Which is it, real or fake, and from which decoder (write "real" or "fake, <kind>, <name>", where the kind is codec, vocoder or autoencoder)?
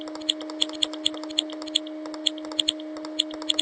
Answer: real